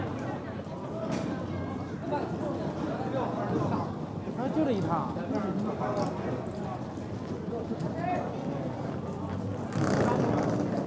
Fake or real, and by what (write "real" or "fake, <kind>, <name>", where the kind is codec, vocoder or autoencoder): real